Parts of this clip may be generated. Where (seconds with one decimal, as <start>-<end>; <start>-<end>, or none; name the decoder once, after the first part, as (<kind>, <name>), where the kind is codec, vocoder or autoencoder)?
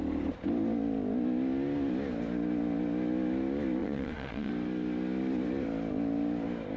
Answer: 3.8-4.5 (vocoder, Vocos)